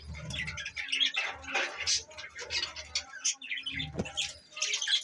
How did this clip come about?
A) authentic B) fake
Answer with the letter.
A